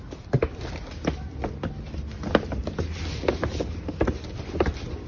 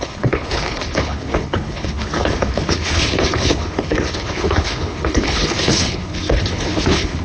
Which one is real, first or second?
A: first